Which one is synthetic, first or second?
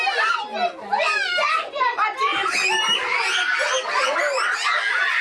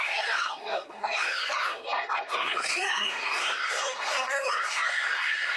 second